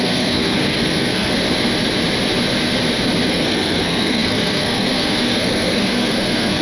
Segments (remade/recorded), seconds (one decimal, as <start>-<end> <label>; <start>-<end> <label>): 0.0-1.3 remade; 1.3-3.3 recorded; 3.3-6.6 remade